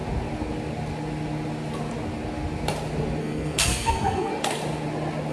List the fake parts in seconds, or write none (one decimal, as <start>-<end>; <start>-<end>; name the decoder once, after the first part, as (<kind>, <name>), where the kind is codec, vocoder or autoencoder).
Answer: 3.2-4.3 (codec, SNAC)